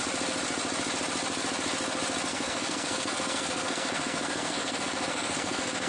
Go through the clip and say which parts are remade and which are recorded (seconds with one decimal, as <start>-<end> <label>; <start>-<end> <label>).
0.0-2.3 recorded; 2.3-5.9 remade